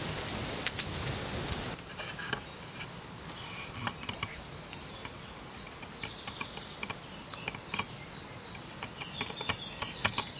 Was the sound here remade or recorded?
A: recorded